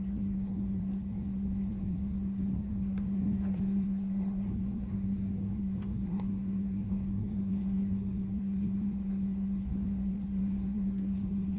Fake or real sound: fake